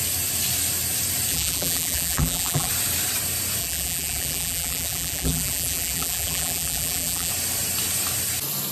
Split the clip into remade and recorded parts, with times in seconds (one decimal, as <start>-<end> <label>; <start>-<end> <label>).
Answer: 0.0-1.3 recorded; 1.3-2.7 remade; 2.7-3.6 recorded; 3.6-7.3 remade; 7.3-8.7 recorded